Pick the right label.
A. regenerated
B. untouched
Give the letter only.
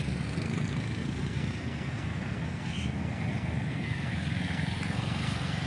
A